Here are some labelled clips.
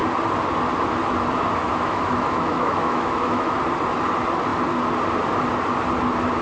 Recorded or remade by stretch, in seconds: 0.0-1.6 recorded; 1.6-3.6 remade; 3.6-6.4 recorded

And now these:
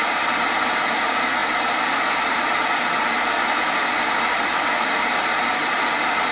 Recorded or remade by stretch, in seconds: 0.0-6.3 remade

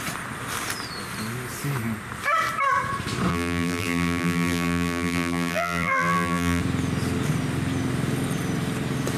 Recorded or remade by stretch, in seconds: 0.0-3.3 recorded; 3.3-6.6 remade; 6.6-9.2 recorded

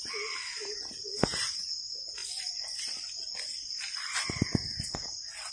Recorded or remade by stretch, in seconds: 0.0-5.5 recorded

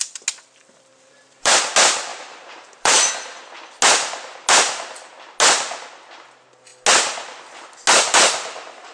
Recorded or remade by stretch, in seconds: 0.0-0.9 recorded; 0.9-1.6 remade; 1.6-2.1 recorded; 2.1-3.1 remade; 3.1-8.9 recorded

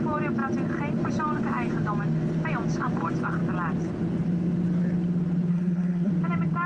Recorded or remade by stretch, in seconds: 0.0-5.5 recorded; 5.5-6.1 remade; 6.1-6.7 recorded

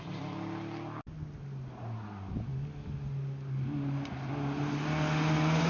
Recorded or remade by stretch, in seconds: 0.0-5.7 recorded

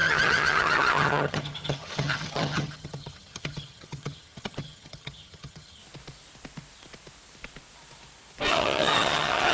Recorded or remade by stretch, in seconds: 0.0-5.8 remade; 5.8-8.5 recorded; 8.5-9.5 remade